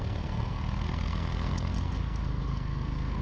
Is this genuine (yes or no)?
no